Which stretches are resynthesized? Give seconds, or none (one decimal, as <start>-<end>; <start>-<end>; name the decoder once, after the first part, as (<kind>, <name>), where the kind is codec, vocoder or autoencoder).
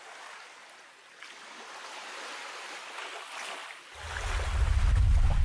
0.0-2.4 (vocoder, BigVGAN v2); 3.1-3.6; 4.7-5.4